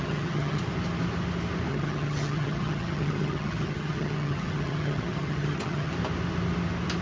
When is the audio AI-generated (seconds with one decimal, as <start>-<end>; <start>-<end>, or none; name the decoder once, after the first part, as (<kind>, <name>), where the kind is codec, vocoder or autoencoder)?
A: 0.0-0.6 (vocoder, HiFi-GAN); 1.7-5.9